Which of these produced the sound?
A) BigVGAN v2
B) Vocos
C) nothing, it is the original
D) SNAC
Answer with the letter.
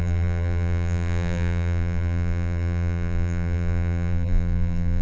A